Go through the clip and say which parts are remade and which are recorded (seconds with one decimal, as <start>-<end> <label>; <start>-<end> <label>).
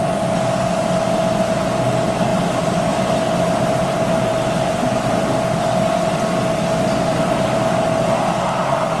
0.0-9.0 recorded